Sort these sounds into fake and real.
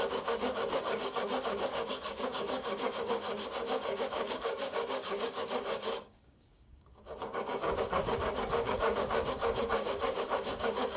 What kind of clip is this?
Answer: fake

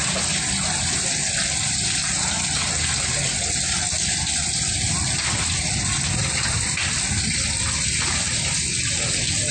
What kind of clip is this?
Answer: real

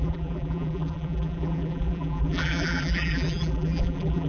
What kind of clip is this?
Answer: fake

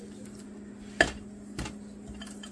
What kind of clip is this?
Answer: real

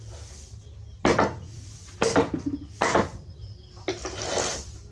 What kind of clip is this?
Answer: real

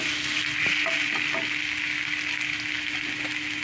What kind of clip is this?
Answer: real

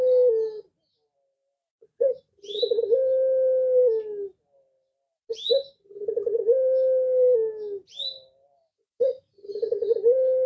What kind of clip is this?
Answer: real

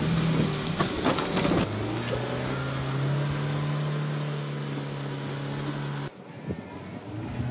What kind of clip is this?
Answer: real